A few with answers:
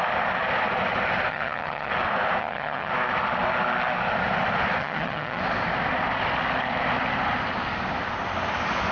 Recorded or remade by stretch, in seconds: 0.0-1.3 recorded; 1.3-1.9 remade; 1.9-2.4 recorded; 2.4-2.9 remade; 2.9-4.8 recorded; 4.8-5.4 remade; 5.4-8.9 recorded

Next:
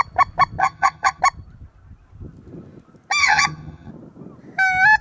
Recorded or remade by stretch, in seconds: 0.0-0.6 recorded; 0.6-1.2 remade; 1.2-3.2 recorded; 3.2-3.9 remade; 3.9-5.0 recorded

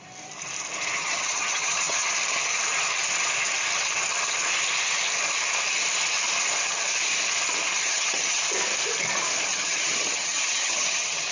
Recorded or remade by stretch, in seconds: 0.0-1.0 recorded; 1.0-2.1 remade; 2.1-7.7 recorded; 7.7-8.4 remade; 8.4-9.5 recorded; 9.5-11.3 remade